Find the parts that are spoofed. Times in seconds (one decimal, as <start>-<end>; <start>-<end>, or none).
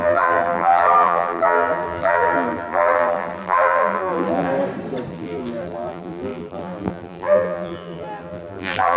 0.0-4.5; 5.1-9.0